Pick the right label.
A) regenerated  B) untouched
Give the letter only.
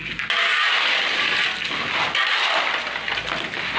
B